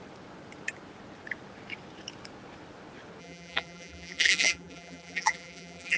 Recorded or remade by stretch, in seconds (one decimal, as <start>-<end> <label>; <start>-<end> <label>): 0.0-3.2 recorded; 3.2-6.0 remade

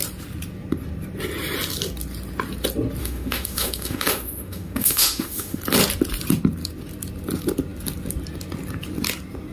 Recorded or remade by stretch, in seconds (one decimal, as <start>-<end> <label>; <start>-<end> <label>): 0.0-3.0 recorded; 3.0-5.6 remade; 5.6-9.5 recorded